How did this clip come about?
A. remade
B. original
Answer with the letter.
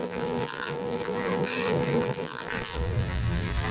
A